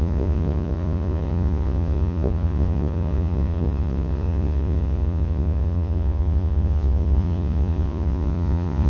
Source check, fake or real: fake